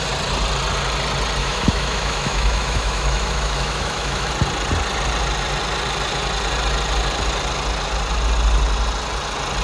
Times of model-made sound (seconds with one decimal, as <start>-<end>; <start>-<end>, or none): 1.4-4.3